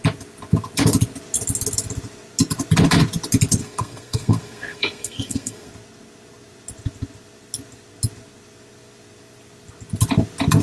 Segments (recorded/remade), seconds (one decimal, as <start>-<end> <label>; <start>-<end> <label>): 0.0-3.6 recorded; 3.6-5.7 remade; 5.7-10.6 recorded